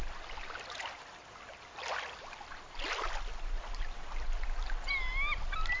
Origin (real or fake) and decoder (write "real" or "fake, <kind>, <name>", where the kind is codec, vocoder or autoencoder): real